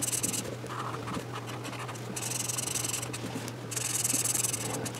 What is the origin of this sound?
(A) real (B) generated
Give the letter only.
A